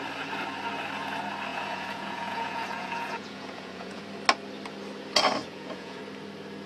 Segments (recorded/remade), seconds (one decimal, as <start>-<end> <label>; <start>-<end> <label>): 0.0-1.5 recorded; 1.5-4.0 remade; 4.0-5.4 recorded; 5.4-6.0 remade; 6.0-6.7 recorded